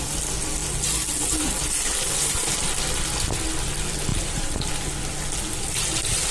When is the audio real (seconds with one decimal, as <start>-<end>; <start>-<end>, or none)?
0.0-4.1; 4.7-6.3